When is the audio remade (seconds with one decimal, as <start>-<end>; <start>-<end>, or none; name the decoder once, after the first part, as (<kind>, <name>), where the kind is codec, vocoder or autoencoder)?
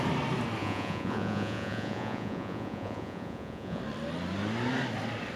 0.6-3.8 (vocoder, Vocos)